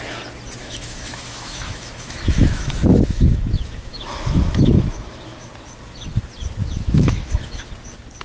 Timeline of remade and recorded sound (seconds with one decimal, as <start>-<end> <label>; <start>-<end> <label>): 0.0-0.6 recorded; 0.6-5.5 remade; 5.5-6.6 recorded; 6.6-7.7 remade; 7.7-8.2 recorded